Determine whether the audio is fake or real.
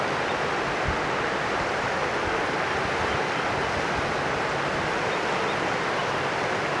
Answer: real